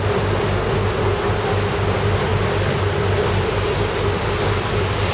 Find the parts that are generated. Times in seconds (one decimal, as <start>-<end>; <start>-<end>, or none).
none